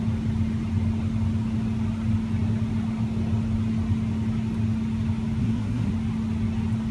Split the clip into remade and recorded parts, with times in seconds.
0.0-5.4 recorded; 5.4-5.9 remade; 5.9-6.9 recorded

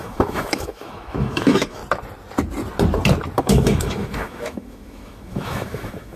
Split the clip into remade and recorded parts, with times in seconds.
0.0-1.8 remade; 1.8-3.4 recorded; 3.4-6.2 remade